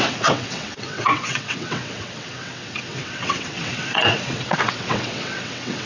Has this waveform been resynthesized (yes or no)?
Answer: yes